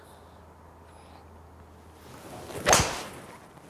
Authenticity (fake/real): real